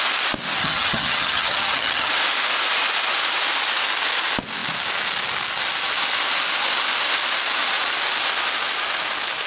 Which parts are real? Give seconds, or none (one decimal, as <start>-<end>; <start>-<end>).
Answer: 0.0-0.6; 2.1-9.5